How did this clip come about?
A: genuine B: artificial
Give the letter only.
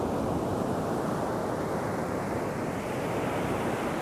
A